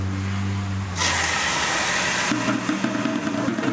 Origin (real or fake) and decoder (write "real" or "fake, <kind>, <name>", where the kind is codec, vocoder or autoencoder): real